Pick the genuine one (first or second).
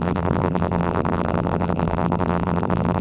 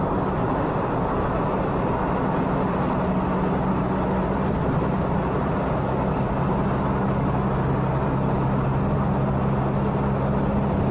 second